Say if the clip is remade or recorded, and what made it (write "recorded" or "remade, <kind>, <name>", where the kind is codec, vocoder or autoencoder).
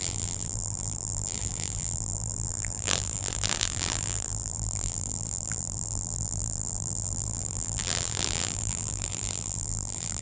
remade, vocoder, BigVGAN v2